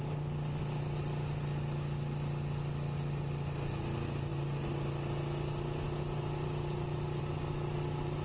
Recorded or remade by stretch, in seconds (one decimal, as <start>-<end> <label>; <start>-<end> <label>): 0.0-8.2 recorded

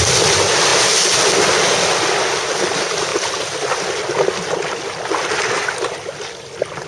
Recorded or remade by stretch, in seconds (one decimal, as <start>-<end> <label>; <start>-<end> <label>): 0.0-6.9 recorded

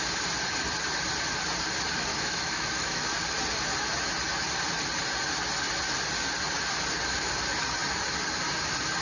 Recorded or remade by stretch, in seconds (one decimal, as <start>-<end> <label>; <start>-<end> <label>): 0.0-2.1 recorded; 2.1-3.0 remade; 3.0-9.0 recorded

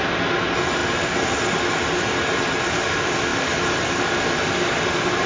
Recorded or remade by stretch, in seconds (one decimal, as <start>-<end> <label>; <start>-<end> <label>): 0.0-5.3 recorded

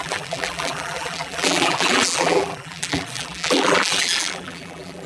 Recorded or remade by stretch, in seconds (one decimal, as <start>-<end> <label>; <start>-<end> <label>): 0.0-5.1 remade